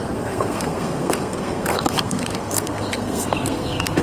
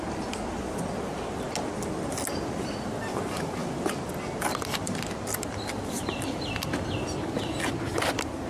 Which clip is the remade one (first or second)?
first